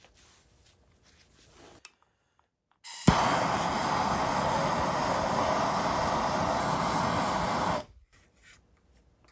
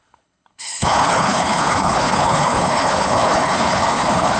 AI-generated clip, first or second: second